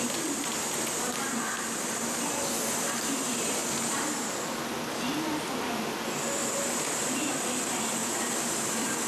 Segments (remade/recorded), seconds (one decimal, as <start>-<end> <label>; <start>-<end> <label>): 0.0-3.6 remade; 3.6-7.3 recorded; 7.3-9.1 remade